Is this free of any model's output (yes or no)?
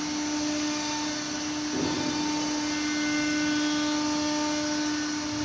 yes